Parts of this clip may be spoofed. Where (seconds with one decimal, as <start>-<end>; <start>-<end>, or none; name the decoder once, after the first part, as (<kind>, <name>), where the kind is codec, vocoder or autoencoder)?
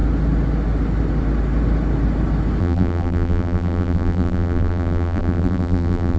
2.6-6.2 (vocoder, BigVGAN v2)